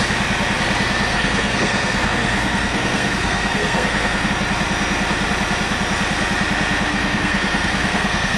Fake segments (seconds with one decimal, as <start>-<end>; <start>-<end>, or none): 1.1-4.3; 6.9-8.4